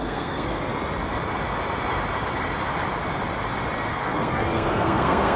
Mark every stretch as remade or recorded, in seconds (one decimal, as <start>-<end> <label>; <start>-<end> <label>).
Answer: 0.0-0.7 remade; 0.7-3.9 recorded; 3.9-5.4 remade